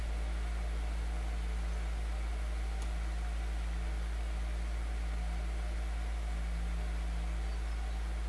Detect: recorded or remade recorded